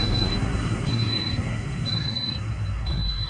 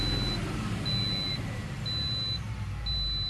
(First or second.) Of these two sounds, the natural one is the second